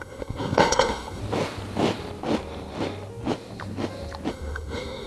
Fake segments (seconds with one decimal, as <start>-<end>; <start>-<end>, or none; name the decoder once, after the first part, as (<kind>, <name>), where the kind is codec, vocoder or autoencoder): 0.0-1.2 (codec, SNAC); 4.3-5.1